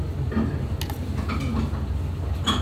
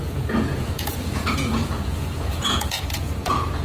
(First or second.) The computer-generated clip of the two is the second